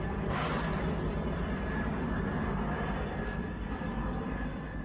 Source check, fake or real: real